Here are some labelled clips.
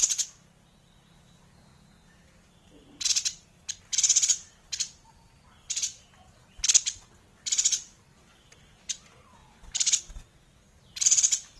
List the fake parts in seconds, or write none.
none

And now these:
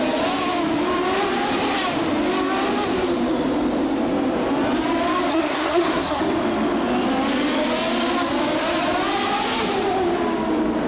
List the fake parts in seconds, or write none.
5.3-6.2 (codec, SNAC)

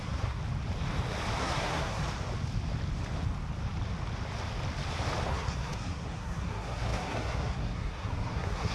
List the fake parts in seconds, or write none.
0.0-0.4 (codec, SNAC); 1.4-2.0; 5.3-8.7

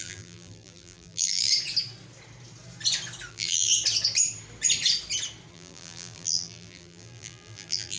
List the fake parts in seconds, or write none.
0.0-1.5 (vocoder, BigVGAN v2); 3.3-3.7; 5.5-8.0

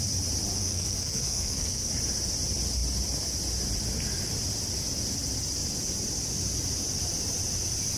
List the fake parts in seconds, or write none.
0.6-1.9 (codec, SNAC)

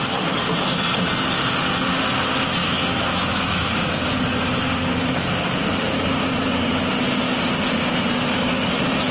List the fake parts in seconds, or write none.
2.6-3.8 (autoencoder, DAC-VAE)

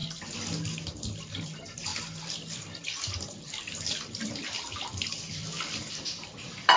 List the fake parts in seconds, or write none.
0.9-6.8 (vocoder, BigVGAN v2)

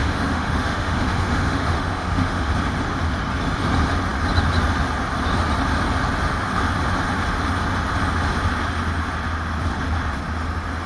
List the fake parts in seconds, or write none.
0.0-2.5 (autoencoder, DAC-VAE)